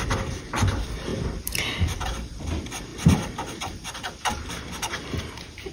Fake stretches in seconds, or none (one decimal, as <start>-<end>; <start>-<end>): 1.1-2.4; 2.9-4.3